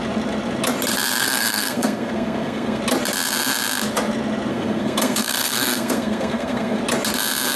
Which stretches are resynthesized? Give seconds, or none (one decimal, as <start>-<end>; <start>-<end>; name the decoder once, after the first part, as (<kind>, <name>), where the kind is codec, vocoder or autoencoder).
1.2-2.8 (codec, SNAC); 4.5-6.8